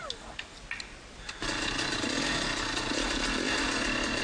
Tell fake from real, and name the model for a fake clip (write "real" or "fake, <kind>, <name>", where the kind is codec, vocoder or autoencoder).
real